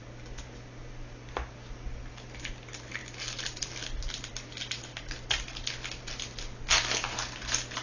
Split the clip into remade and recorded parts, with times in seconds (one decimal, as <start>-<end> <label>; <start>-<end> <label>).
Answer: 0.0-7.8 recorded